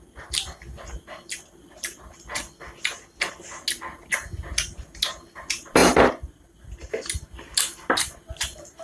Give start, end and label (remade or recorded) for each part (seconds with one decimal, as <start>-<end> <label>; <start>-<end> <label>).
0.0-8.8 recorded